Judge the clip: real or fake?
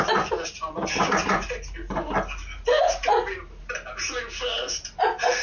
real